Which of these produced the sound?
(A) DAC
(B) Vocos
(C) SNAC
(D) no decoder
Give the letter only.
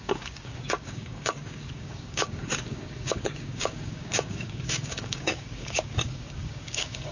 A